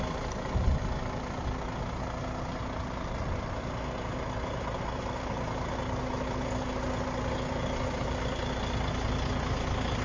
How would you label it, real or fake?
real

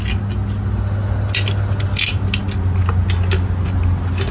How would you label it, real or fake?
real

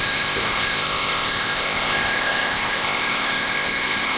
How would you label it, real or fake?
fake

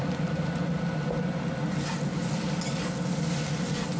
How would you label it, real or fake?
real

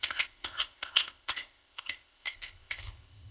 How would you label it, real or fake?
fake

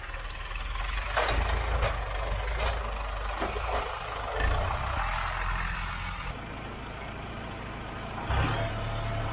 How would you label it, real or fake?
real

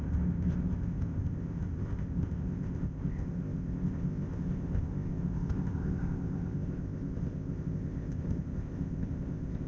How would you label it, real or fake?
fake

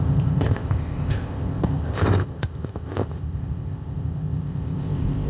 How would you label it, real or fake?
fake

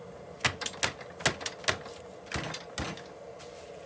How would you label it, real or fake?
real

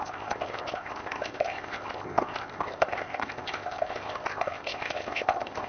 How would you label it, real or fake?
fake